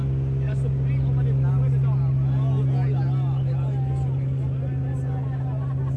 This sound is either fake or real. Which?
real